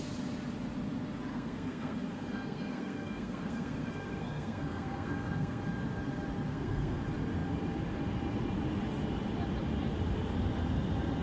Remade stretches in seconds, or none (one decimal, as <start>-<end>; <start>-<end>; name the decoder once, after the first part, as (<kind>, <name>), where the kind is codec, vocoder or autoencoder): 1.3-5.6 (codec, SNAC); 6.5-7.0